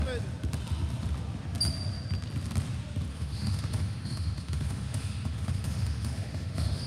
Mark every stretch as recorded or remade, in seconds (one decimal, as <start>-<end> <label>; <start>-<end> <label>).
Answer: 0.0-3.1 recorded; 3.1-6.9 remade